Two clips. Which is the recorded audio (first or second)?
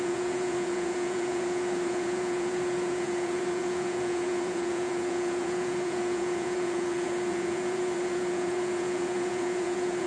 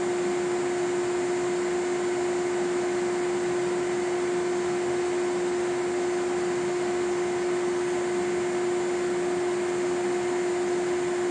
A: second